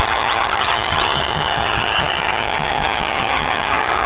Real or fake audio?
fake